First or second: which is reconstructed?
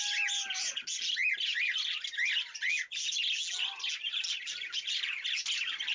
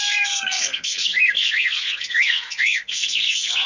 second